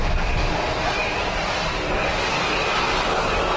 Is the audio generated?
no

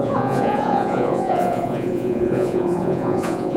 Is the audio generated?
yes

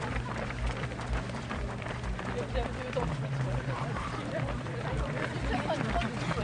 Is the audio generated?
yes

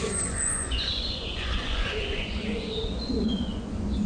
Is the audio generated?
yes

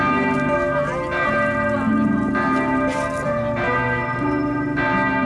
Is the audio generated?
no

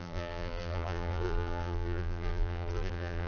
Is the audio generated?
yes